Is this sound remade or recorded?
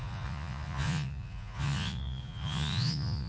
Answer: remade